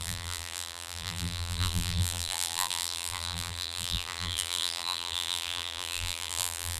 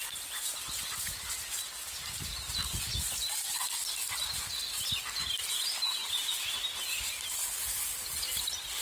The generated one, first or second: first